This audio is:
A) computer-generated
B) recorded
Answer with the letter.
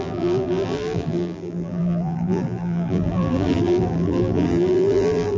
A